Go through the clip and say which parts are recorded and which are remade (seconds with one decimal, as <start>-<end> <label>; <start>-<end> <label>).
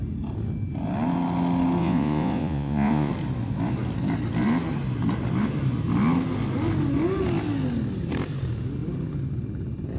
0.0-1.8 recorded; 1.8-3.1 remade; 3.1-10.0 recorded